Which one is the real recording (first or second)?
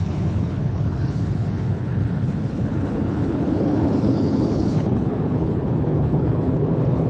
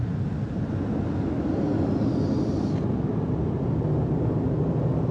second